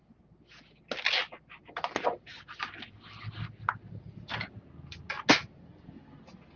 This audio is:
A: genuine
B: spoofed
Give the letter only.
A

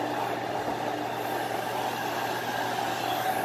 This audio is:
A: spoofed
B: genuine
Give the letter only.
B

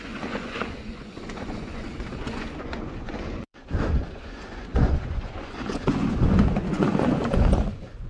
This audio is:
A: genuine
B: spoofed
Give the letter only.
B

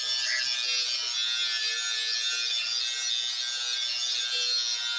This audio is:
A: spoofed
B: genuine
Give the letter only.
B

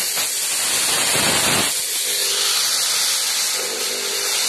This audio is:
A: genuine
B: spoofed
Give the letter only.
A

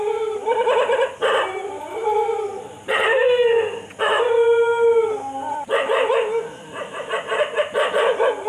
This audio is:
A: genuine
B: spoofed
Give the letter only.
A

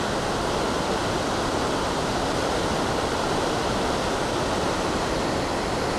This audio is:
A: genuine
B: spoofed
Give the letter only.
A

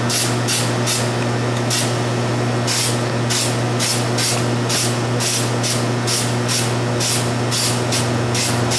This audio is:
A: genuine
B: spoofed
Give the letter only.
A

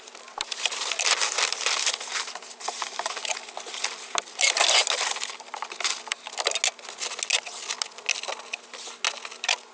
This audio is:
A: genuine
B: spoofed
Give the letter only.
A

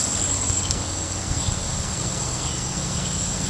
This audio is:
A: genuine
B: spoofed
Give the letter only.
B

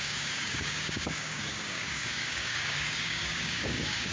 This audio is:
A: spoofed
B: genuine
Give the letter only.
A